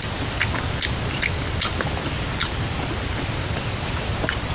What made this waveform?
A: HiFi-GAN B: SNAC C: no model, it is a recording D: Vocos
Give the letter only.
C